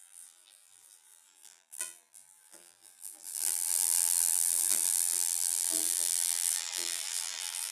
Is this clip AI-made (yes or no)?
yes